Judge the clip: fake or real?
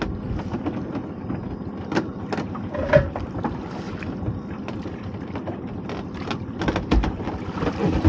real